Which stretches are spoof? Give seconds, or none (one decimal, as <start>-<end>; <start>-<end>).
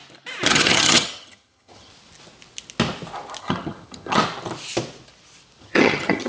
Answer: 0.5-1.9; 3.4-4.2; 5.6-6.3